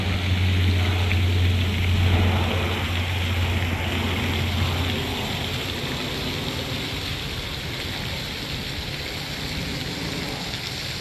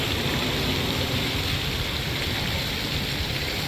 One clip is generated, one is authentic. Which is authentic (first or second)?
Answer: first